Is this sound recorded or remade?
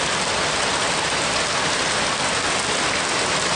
remade